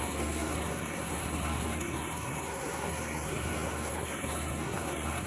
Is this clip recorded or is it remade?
remade